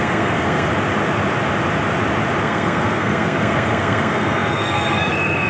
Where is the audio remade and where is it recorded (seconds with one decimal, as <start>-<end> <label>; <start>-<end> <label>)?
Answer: 0.0-0.7 remade; 0.7-2.4 recorded; 2.4-5.5 remade